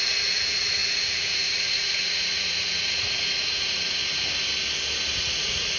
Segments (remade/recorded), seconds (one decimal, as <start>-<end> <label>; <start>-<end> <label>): 0.0-4.0 remade; 4.0-5.2 recorded; 5.2-5.8 remade